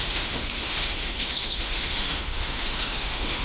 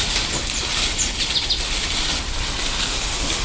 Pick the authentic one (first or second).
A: second